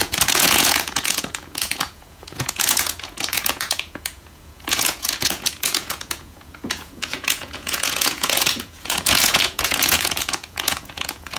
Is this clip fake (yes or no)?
yes